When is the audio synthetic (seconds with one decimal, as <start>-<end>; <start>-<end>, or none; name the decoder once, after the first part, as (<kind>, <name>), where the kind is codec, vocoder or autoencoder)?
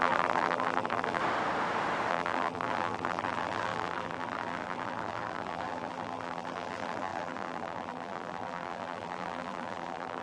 0.0-1.2 (vocoder, BigVGAN v2); 2.1-10.2